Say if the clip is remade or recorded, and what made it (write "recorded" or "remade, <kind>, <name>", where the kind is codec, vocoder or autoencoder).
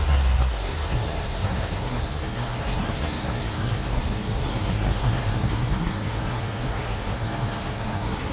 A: remade, codec, SNAC